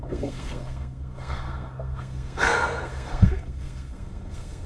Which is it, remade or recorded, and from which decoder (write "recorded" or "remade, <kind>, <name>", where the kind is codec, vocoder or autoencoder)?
remade, codec, SNAC